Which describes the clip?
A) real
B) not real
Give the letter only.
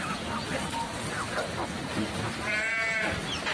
A